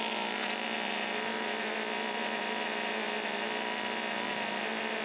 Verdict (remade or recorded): recorded